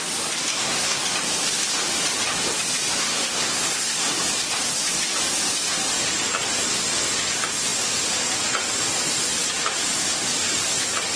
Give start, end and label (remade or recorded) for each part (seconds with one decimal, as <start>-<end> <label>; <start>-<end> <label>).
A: 0.0-0.5 recorded; 0.5-1.0 remade; 1.0-3.0 recorded; 3.0-4.1 remade; 4.1-11.2 recorded